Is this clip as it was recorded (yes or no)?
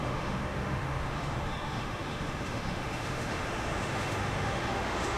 no